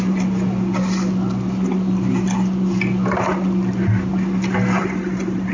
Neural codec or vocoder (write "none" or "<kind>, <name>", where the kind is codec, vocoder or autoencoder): none